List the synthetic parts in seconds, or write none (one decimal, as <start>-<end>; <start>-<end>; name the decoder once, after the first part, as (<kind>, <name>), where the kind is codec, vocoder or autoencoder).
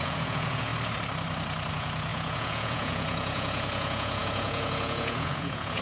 0.0-0.7 (vocoder, Vocos); 1.7-5.8